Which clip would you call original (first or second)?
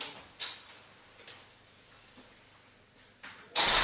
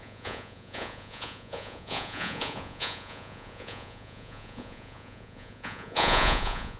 first